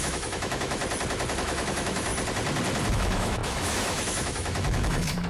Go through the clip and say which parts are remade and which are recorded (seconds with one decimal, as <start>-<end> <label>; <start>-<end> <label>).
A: 0.0-0.8 remade; 0.8-1.3 recorded; 1.3-2.1 remade; 2.1-2.9 recorded; 2.9-5.3 remade